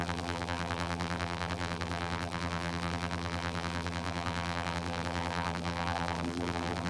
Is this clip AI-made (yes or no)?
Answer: yes